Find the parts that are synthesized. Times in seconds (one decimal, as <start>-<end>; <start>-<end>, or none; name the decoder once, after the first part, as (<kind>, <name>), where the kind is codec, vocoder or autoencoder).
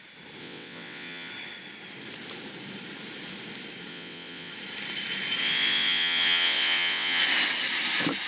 0.4-1.3 (vocoder, WaveNeXt); 3.9-4.5; 5.4-7.2